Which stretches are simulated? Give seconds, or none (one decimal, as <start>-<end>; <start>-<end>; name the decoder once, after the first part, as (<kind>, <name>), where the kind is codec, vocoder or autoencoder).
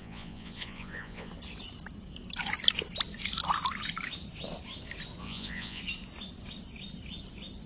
0.0-1.3 (vocoder, Vocos); 5.2-5.8